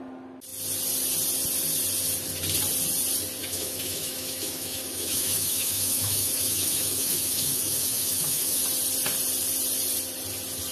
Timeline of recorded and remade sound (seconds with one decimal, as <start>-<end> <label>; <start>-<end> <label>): 0.0-3.4 recorded; 3.4-8.6 remade; 8.6-10.7 recorded